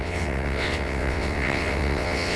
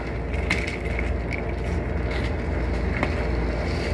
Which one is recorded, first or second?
second